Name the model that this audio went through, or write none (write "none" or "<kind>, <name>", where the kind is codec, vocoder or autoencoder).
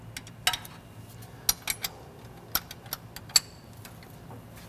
none